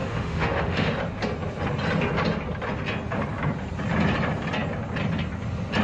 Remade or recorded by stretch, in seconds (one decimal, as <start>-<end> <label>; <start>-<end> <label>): 0.0-0.9 remade; 0.9-5.8 recorded